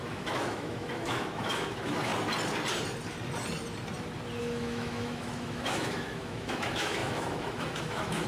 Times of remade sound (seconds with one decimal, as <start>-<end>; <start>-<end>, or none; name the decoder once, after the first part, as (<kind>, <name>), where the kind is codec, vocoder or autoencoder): 0.0-2.1 (autoencoder, DAC-VAE); 4.4-8.3